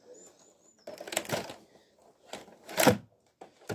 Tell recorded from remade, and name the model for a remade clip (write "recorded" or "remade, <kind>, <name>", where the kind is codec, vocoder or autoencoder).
recorded